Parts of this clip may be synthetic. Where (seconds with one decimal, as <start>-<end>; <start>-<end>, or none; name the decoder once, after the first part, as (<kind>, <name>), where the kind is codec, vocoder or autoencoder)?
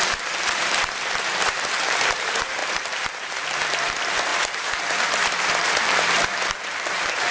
0.0-7.3 (vocoder, BigVGAN v2)